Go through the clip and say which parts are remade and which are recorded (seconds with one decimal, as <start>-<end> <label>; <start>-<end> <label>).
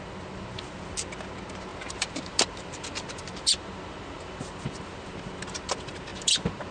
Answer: 0.0-1.7 recorded; 1.7-5.1 remade; 5.1-6.1 recorded; 6.1-6.7 remade